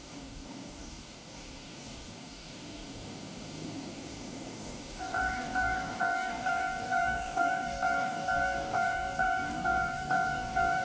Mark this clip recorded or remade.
remade